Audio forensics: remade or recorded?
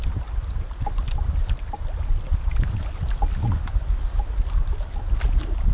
recorded